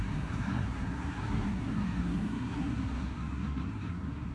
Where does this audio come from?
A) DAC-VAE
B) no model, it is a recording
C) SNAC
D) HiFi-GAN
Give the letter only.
C